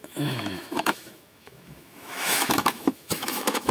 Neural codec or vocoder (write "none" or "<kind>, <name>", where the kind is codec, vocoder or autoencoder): autoencoder, DAC-VAE